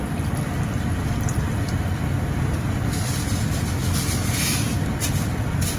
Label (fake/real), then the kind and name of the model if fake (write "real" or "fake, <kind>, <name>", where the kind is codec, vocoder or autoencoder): real